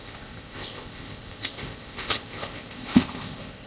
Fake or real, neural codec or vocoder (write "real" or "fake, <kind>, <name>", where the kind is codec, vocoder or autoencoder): fake, codec, ZipCodec